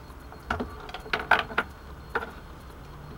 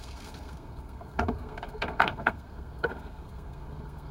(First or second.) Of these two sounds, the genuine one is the first